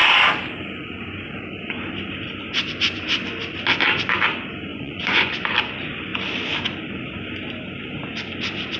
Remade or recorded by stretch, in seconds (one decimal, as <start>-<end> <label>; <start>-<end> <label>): 0.0-4.7 recorded; 4.7-5.4 remade; 5.4-8.8 recorded